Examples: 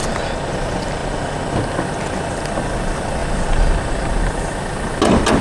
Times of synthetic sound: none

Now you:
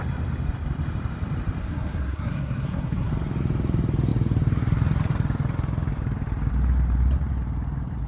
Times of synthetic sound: 1.6-3.1 (codec, SNAC)

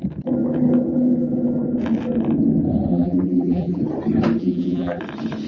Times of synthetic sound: 2.9-3.8 (vocoder, BigVGAN v2); 4.4-5.0